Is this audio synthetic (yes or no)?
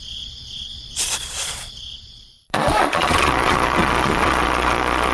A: yes